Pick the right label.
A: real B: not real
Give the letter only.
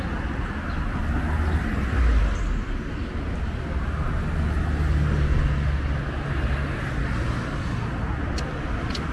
A